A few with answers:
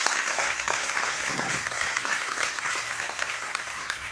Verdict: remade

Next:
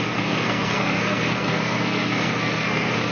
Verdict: remade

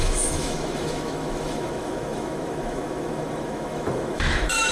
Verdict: remade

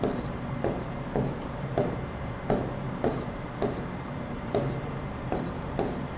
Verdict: remade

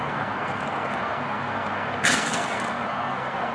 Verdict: remade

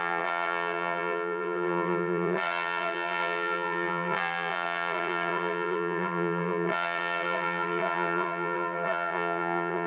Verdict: remade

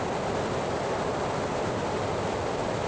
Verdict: recorded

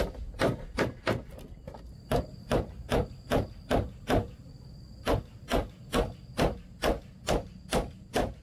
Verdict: recorded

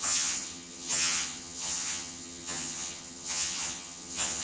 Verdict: remade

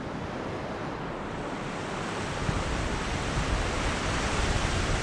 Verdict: recorded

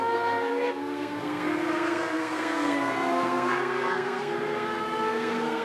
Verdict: remade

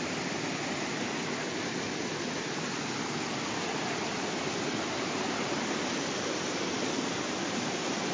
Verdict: recorded